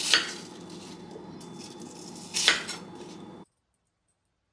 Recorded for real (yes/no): yes